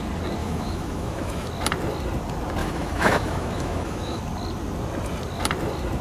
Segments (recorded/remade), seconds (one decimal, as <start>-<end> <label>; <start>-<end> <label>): 0.0-0.4 recorded; 0.4-1.5 remade; 1.5-2.6 recorded; 2.6-4.2 remade; 4.2-6.0 recorded

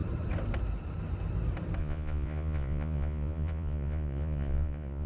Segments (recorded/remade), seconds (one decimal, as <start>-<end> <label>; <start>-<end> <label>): 0.0-1.8 recorded; 1.8-5.1 remade

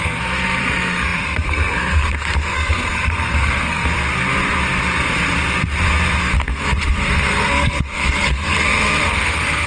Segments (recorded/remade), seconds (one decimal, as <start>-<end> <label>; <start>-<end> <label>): 0.0-3.8 remade; 3.8-6.2 recorded; 6.2-9.7 remade